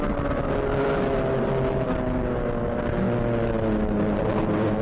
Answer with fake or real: real